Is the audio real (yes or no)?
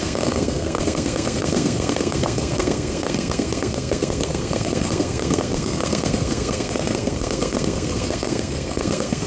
no